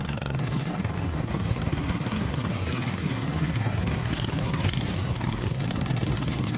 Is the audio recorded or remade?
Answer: remade